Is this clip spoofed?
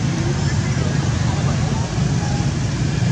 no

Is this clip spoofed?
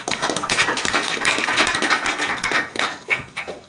yes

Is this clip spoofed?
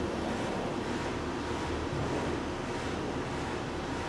no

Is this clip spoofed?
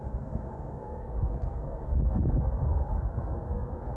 yes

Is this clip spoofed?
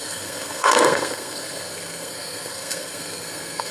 yes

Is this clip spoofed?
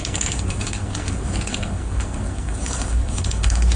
yes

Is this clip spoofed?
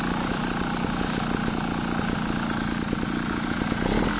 no